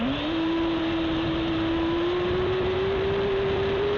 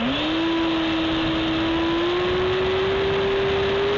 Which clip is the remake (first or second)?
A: first